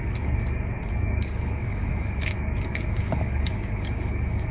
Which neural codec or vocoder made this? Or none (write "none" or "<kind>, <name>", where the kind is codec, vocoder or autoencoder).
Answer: codec, DAC